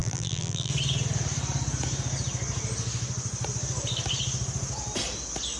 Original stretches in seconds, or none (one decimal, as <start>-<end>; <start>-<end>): 0.7-5.6

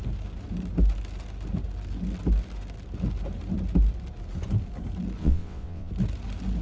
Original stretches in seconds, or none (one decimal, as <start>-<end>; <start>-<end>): 0.0-5.2; 5.9-6.6